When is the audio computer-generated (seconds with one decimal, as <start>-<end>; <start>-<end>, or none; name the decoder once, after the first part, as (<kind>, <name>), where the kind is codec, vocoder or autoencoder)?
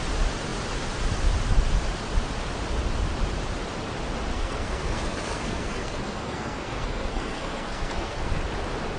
4.3-8.4 (codec, SNAC)